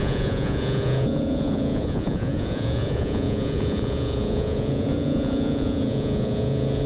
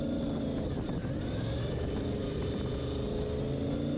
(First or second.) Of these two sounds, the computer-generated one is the first